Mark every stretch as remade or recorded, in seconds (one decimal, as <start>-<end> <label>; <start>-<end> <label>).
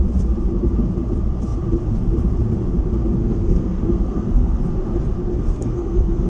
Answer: 0.0-3.2 recorded; 3.2-4.6 remade; 4.6-5.3 recorded; 5.3-6.3 remade